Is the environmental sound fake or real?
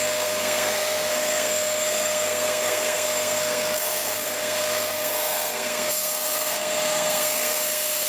fake